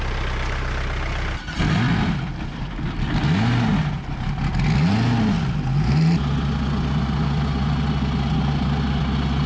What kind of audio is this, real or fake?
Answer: real